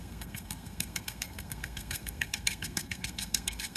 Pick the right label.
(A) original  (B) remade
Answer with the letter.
B